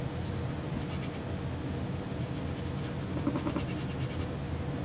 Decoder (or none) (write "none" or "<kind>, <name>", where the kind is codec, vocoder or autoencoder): none